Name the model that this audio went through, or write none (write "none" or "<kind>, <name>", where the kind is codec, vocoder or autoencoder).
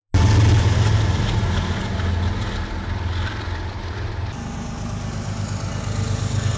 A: none